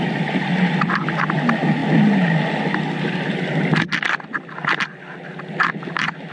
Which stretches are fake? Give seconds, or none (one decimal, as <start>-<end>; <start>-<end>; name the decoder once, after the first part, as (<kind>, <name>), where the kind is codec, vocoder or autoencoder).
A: none